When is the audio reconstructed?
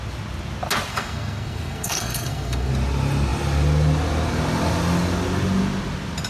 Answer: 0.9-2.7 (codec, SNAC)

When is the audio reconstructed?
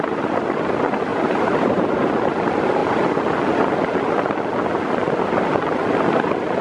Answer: 1.1-2.1 (vocoder, BigVGAN v2)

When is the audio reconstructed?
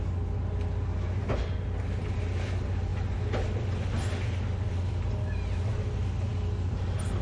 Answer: none